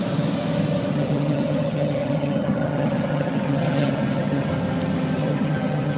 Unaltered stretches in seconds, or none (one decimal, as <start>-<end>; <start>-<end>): 0.0-0.9; 4.5-5.2